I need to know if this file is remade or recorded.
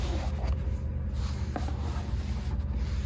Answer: recorded